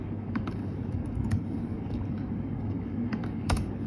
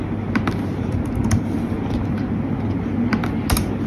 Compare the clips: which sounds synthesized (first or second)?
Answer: first